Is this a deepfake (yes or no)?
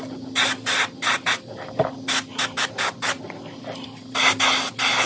no